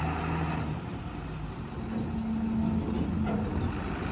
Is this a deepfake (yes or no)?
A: no